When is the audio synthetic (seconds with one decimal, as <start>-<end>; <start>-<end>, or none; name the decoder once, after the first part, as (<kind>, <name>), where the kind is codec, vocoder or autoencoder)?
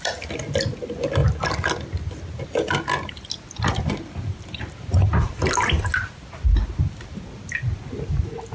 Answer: none